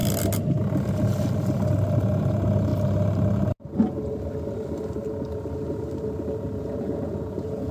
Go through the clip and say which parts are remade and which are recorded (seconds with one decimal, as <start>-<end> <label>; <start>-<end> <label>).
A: 0.0-2.0 recorded; 2.0-2.7 remade; 2.7-6.6 recorded; 6.6-7.7 remade